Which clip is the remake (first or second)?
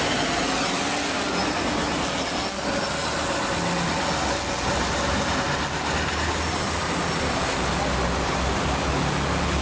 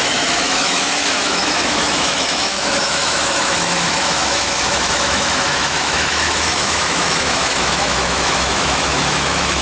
second